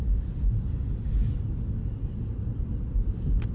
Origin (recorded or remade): recorded